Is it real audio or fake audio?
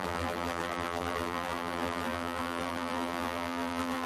fake